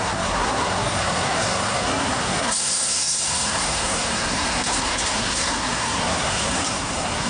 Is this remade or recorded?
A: remade